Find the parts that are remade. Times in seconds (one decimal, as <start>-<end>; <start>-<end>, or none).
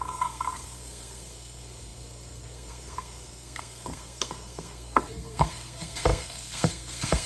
0.0-7.3